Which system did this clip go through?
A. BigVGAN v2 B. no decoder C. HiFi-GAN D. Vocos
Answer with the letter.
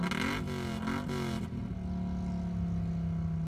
B